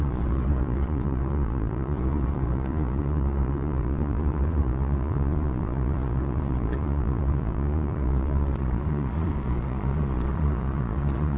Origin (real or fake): fake